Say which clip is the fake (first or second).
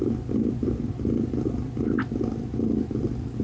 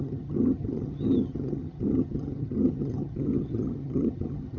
second